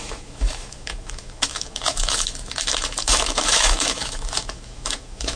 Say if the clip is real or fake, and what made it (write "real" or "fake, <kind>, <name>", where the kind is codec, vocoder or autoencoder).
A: fake, autoencoder, DAC-VAE